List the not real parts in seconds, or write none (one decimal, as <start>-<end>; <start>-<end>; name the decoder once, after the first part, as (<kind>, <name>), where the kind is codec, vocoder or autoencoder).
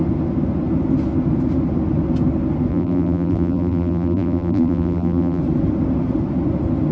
2.7-5.4 (vocoder, BigVGAN v2)